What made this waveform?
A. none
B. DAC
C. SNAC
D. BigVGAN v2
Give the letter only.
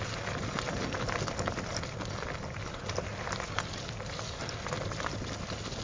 A